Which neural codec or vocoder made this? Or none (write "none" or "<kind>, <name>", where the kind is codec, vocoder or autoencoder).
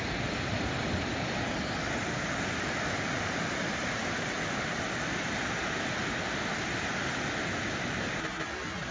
none